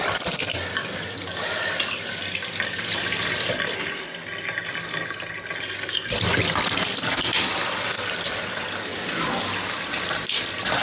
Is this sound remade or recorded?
recorded